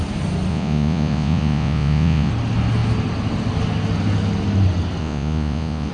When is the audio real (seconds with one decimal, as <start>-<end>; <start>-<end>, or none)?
0.0-0.5; 2.3-5.0